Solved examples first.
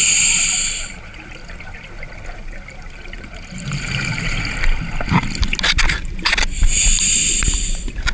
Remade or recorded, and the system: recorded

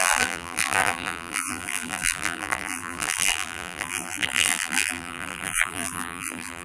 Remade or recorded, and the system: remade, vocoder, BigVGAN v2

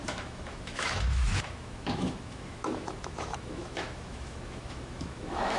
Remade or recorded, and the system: remade, autoencoder, DAC-VAE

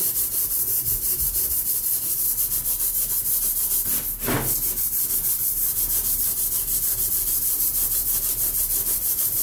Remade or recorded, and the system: recorded